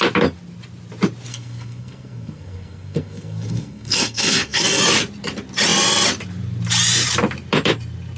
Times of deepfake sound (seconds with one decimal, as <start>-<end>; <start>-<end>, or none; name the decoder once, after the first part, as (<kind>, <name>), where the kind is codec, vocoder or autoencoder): 1.3-4.8 (codec, SNAC)